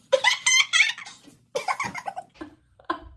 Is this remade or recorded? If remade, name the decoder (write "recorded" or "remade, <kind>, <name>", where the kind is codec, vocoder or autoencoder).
recorded